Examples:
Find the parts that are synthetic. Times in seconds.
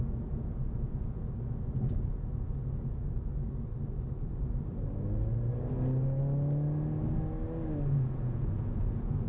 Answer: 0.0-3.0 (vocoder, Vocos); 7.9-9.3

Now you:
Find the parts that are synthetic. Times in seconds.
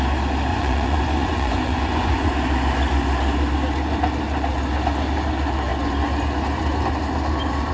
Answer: 0.5-2.3 (vocoder, Vocos)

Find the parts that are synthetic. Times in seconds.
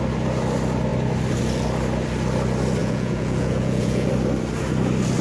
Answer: 2.8-4.1 (vocoder, Vocos)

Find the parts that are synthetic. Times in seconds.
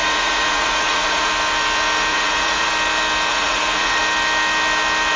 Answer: 0.0-1.3 (vocoder, Vocos); 2.1-2.7; 3.3-4.0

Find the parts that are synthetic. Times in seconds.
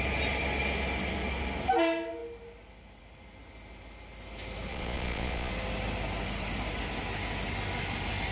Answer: 4.7-5.5 (vocoder, Vocos)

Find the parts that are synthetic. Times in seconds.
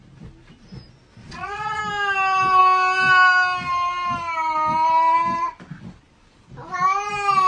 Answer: 1.2-1.8 (vocoder, Vocos)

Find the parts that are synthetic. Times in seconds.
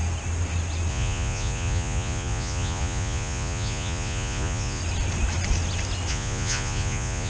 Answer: 0.9-4.8 (vocoder, Vocos); 6.1-7.3